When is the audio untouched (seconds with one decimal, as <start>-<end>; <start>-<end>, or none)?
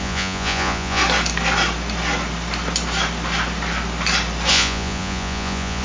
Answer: 1.0-4.5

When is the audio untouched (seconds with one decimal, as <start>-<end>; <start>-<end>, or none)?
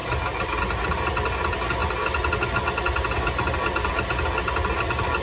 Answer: 0.0-5.2